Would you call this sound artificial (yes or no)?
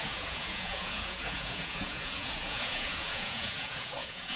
yes